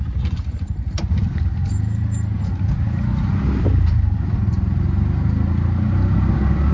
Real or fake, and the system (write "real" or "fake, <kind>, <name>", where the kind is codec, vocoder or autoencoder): real